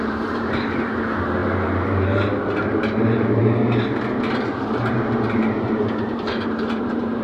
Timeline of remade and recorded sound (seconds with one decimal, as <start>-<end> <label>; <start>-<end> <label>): 0.0-3.4 remade; 3.4-4.5 recorded; 4.5-7.2 remade